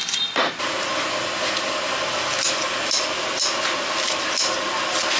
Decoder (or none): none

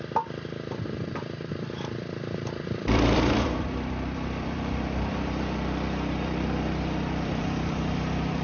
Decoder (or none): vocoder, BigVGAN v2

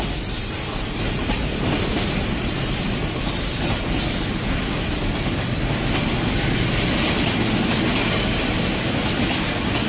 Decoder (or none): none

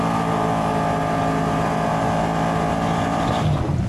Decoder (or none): none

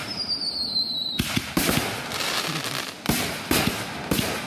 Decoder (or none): none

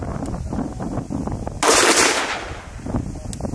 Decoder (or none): none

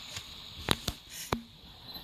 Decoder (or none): none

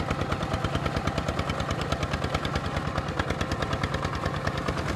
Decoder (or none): none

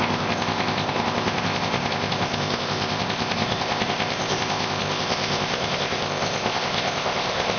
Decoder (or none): codec, ZipCodec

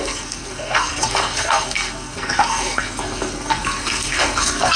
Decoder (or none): codec, SNAC